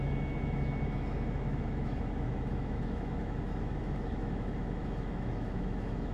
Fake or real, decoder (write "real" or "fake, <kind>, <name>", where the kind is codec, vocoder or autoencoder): fake, autoencoder, DAC-VAE